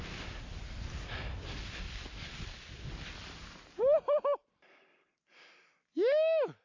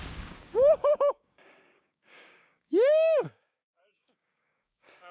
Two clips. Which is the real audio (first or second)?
first